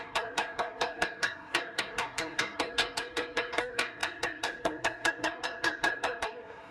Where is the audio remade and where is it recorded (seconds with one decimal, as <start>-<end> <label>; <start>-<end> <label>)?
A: 0.0-6.7 remade